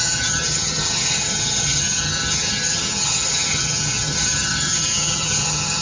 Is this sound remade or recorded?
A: remade